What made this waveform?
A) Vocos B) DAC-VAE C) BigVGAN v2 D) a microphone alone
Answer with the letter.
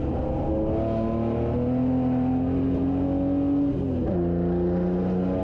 D